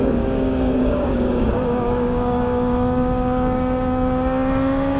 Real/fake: fake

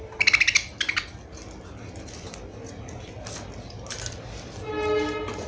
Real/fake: real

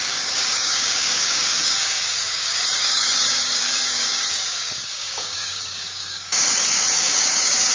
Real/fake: fake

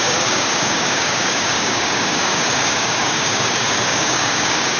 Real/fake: fake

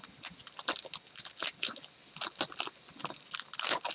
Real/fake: real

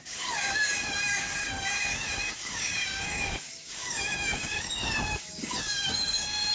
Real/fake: fake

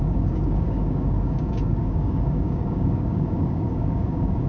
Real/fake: fake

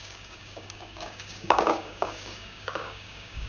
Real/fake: fake